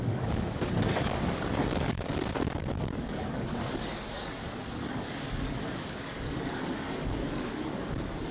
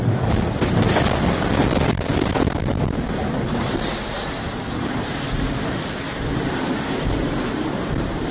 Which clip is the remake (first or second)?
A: first